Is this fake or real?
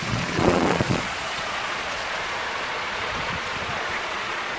fake